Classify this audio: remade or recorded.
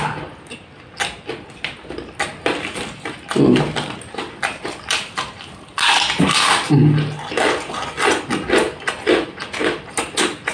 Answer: recorded